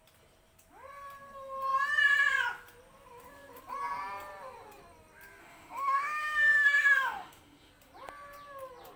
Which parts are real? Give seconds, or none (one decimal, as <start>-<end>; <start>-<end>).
0.0-5.4; 7.7-9.0